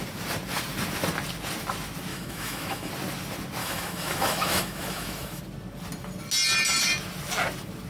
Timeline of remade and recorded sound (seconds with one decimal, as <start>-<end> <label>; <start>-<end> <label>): 0.0-2.1 recorded; 2.1-2.9 remade; 2.9-3.6 recorded; 3.6-5.4 remade; 5.4-7.9 recorded